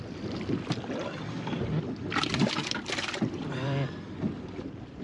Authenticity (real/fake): fake